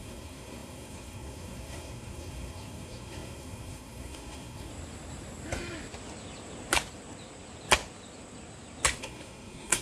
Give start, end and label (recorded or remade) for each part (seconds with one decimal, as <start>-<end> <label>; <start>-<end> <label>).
0.0-4.7 remade; 4.7-9.0 recorded; 9.0-9.8 remade